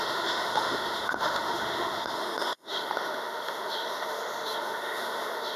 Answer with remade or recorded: remade